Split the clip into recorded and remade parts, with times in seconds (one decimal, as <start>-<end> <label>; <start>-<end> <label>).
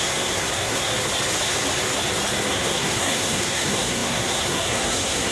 0.0-0.9 remade; 0.9-2.5 recorded; 2.5-5.3 remade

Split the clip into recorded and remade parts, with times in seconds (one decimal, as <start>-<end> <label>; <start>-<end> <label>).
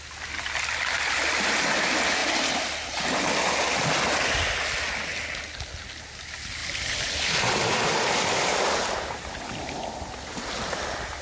0.0-2.2 recorded; 2.2-3.0 remade; 3.0-11.2 recorded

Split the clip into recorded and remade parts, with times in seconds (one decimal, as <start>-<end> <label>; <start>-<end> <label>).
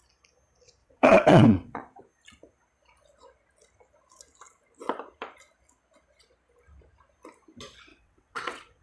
0.0-0.8 recorded; 0.8-2.0 remade; 2.0-7.9 recorded; 7.9-8.8 remade